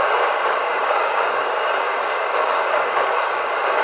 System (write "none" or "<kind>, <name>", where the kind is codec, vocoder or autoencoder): codec, DAC